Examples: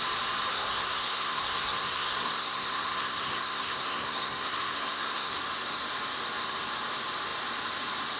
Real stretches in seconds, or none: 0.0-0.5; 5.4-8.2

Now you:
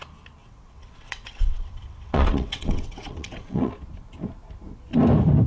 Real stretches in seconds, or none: 0.0-0.4; 3.7-5.5

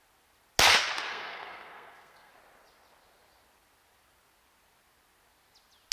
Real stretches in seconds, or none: 0.0-1.1; 2.3-5.9

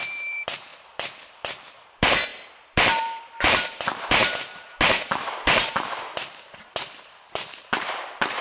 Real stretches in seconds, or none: 0.7-1.8

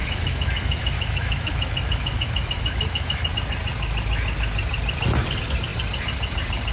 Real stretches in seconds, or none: 3.3-6.7

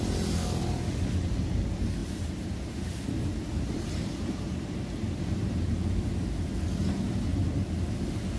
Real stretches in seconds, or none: 0.0-2.0; 6.1-8.4